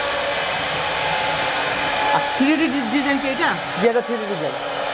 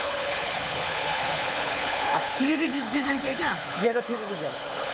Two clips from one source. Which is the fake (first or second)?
second